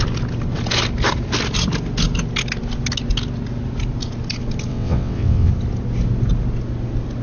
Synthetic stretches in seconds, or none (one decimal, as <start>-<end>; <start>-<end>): 4.7-5.5